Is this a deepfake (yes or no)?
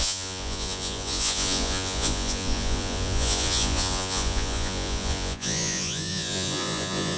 yes